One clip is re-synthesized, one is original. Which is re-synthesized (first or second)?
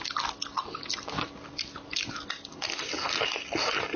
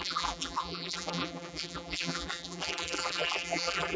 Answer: second